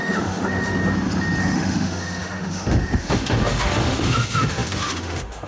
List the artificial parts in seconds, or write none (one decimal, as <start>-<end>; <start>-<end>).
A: 0.0-0.8; 1.4-5.5